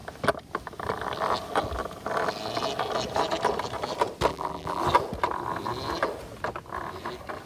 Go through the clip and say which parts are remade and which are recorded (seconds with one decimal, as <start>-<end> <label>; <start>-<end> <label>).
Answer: 0.0-4.3 recorded; 4.3-4.8 remade; 4.8-7.5 recorded